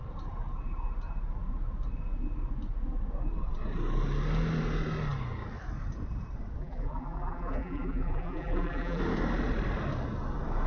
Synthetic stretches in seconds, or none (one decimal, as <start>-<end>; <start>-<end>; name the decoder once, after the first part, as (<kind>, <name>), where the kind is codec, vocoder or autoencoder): 6.6-9.0 (vocoder, BigVGAN v2)